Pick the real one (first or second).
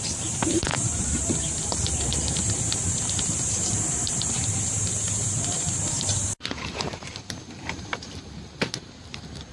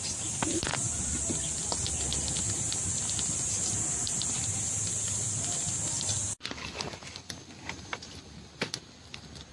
second